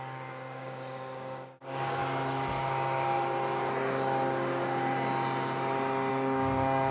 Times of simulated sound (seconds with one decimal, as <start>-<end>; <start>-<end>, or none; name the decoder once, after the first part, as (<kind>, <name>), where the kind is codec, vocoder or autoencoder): 0.0-2.0 (codec, DAC); 6.1-6.9